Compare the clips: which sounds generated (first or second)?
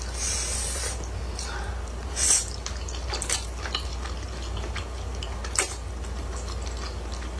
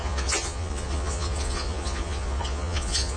second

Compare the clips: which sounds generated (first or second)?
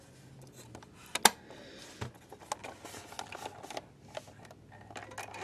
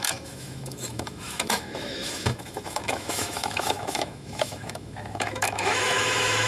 second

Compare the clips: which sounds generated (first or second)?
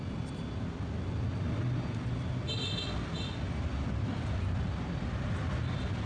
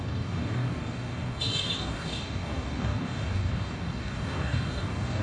second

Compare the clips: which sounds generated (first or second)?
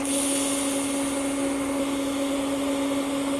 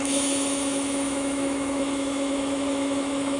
second